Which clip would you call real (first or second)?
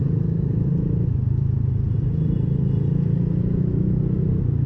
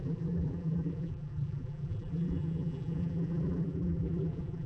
first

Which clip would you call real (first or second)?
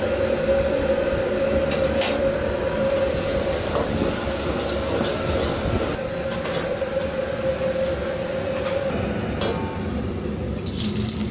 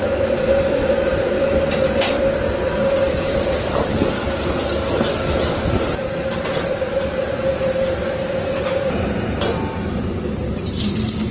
first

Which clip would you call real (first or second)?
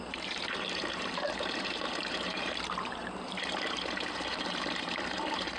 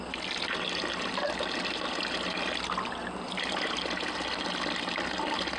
second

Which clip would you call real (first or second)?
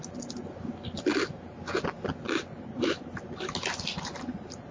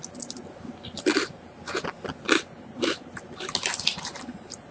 first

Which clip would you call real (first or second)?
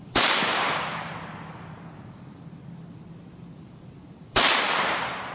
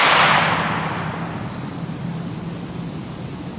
second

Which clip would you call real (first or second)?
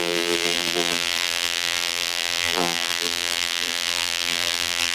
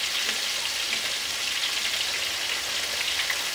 second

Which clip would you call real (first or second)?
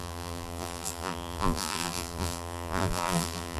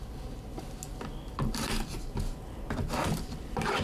second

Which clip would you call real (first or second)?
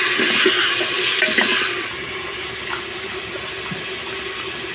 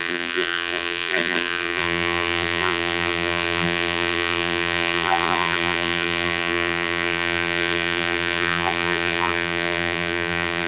first